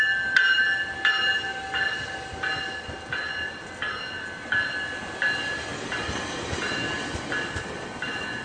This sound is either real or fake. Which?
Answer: real